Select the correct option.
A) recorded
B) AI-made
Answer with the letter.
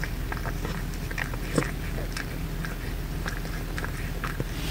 A